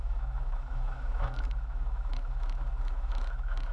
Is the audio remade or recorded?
remade